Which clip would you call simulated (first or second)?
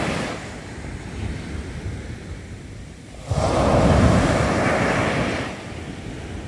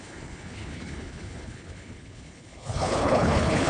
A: second